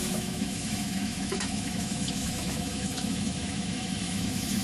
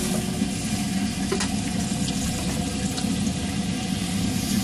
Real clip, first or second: second